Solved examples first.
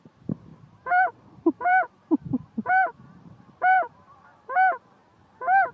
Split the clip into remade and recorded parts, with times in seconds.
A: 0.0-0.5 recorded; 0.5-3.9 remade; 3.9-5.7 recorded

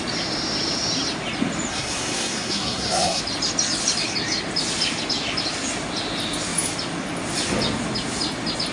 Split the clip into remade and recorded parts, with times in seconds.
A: 0.0-1.7 recorded; 1.7-3.2 remade; 3.2-8.7 recorded

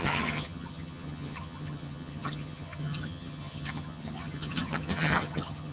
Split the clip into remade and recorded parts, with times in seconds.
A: 0.0-5.7 remade

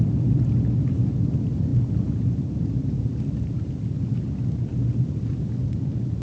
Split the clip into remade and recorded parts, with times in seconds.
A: 0.0-6.2 recorded